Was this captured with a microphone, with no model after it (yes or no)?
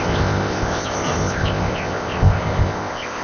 no